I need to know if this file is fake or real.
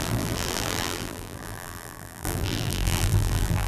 fake